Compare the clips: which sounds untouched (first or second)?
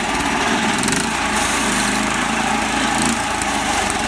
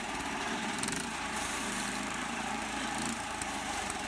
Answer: first